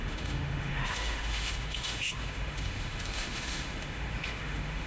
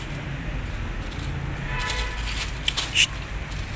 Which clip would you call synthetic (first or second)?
first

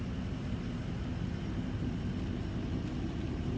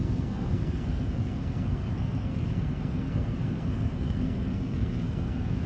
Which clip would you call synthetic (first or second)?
second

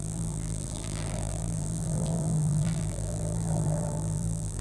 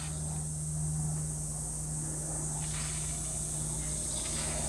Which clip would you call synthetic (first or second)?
first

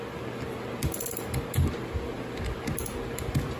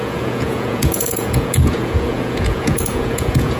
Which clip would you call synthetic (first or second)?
second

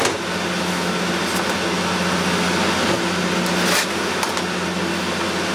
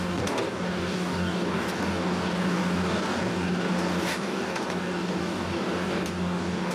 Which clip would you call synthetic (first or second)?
second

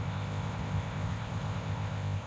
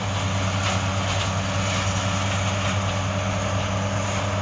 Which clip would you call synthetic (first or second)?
first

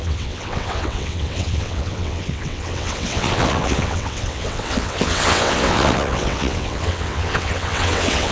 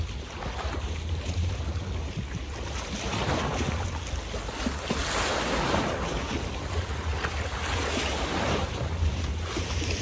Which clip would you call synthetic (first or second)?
first